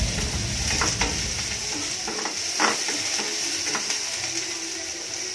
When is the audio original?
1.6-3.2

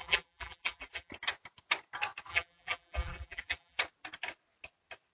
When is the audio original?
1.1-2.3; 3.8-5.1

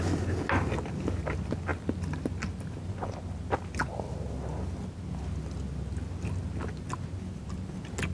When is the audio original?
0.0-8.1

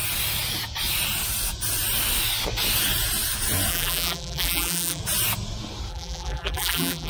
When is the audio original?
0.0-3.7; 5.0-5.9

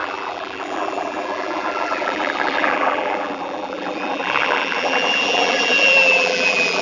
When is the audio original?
none

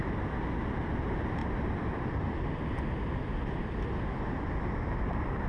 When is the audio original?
0.0-5.5

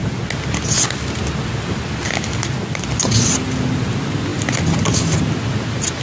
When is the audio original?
0.0-6.0

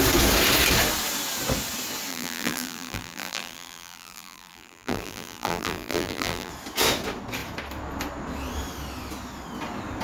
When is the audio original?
0.0-2.1; 6.5-10.0